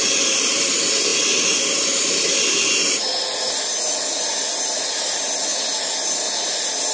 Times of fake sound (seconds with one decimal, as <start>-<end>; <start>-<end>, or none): none